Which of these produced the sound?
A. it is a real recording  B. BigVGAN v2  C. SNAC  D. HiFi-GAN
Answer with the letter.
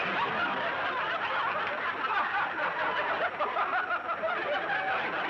A